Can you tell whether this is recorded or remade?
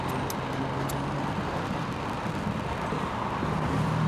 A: recorded